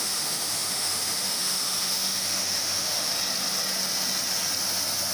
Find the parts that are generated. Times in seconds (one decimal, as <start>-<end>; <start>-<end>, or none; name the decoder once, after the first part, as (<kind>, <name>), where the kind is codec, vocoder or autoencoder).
0.0-3.1 (autoencoder, DAC-VAE)